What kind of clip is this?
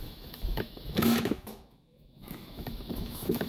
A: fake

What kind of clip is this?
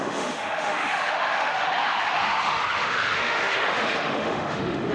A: fake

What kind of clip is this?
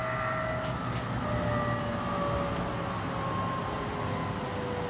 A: real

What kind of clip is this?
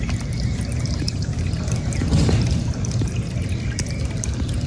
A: real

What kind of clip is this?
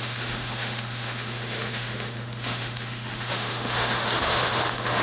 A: fake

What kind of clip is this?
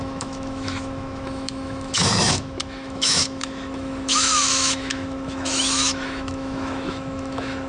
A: fake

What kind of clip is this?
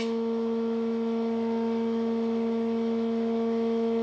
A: fake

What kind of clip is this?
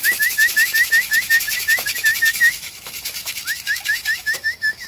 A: fake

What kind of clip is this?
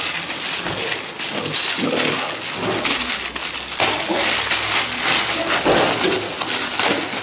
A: real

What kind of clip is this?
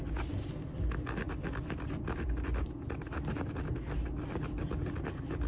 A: real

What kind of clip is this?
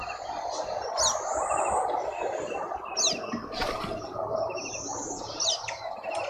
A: real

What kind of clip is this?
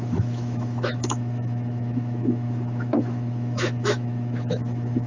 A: fake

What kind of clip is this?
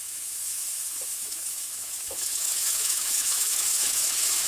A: fake